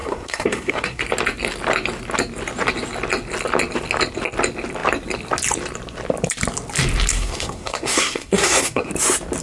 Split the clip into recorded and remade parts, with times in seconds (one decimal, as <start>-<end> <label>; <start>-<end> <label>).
0.0-1.0 remade; 1.0-7.1 recorded; 7.1-8.9 remade; 8.9-9.4 recorded